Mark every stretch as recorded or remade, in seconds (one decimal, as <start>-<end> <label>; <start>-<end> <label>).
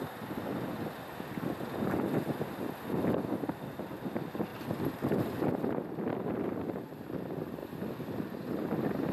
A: 0.0-9.1 recorded